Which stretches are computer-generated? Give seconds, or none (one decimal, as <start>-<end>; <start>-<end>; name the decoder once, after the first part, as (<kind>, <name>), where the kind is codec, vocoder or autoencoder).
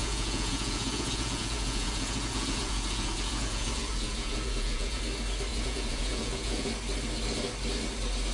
0.0-5.0 (vocoder, Vocos); 5.5-6.7